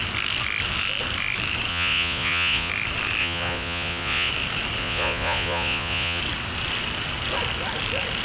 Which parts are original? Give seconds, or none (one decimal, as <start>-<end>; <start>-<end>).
0.0-1.7; 2.7-3.2; 4.3-4.8; 6.2-8.2